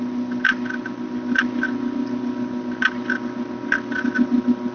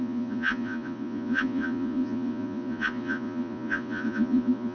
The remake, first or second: second